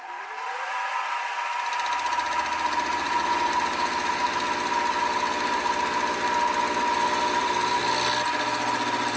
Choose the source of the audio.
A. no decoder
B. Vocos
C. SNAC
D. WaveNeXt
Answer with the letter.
A